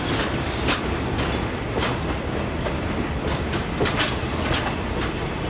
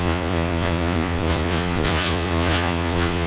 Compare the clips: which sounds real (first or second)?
first